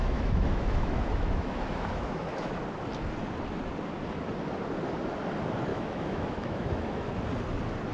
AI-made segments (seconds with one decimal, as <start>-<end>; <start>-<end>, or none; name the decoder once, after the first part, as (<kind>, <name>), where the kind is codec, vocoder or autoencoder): 0.0-2.6 (autoencoder, DAC-VAE); 5.7-7.1